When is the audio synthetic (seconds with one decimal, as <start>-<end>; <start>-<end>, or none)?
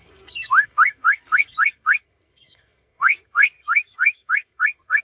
0.0-5.0